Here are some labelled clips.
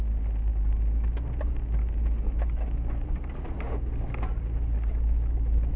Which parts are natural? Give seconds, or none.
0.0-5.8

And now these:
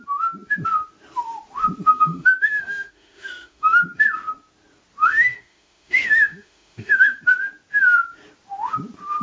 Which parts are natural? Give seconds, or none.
0.0-1.9; 3.8-5.0; 7.2-9.2